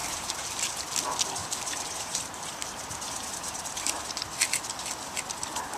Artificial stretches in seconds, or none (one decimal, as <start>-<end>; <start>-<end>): 0.0-0.8; 1.4-4.0